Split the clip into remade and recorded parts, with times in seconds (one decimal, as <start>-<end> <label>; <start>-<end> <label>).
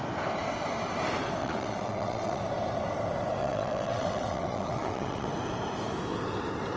0.0-1.4 recorded; 1.4-2.4 remade; 2.4-3.4 recorded; 3.4-5.3 remade; 5.3-6.8 recorded